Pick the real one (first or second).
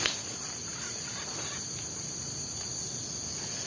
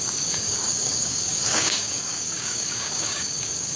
first